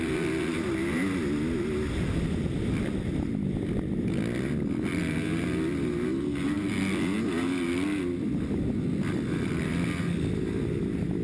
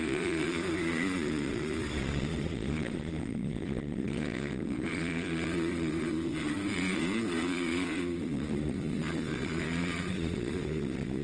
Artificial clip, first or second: second